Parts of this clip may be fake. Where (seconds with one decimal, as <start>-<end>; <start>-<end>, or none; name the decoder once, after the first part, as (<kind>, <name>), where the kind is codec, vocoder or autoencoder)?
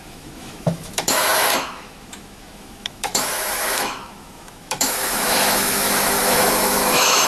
0.0-7.3 (autoencoder, DAC-VAE)